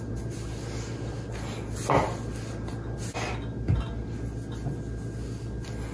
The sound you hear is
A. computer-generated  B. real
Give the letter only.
B